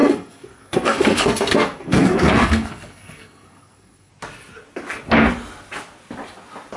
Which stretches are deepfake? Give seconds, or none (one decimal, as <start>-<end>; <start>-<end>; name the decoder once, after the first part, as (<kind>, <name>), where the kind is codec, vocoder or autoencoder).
0.0-4.1 (codec, SNAC)

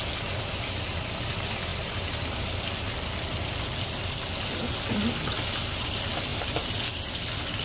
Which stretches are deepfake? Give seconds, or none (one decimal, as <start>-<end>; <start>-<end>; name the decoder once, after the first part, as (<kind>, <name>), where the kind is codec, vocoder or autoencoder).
none

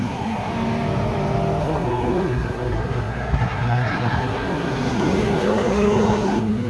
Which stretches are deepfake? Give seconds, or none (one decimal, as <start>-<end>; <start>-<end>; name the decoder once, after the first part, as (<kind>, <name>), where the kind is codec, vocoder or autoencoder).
0.0-0.5 (codec, SNAC); 1.6-6.7